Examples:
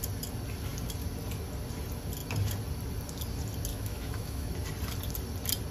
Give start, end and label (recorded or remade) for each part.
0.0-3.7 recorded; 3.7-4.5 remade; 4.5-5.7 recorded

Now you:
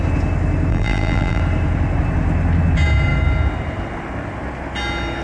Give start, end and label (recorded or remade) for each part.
0.0-0.7 recorded; 0.7-1.4 remade; 1.4-5.2 recorded

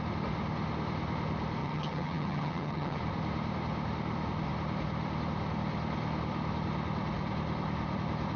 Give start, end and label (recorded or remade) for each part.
0.0-1.6 recorded; 1.6-3.0 remade; 3.0-8.4 recorded

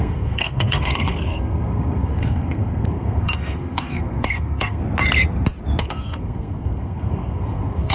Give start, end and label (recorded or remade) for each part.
0.0-4.8 remade; 4.8-5.8 recorded; 5.8-7.9 remade

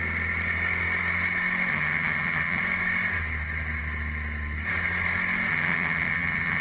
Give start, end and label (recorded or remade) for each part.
0.0-1.7 recorded; 1.7-2.6 remade; 2.6-5.5 recorded; 5.5-6.6 remade

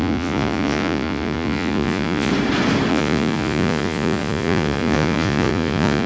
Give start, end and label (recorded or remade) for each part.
0.0-2.3 remade; 2.3-2.9 recorded; 2.9-6.1 remade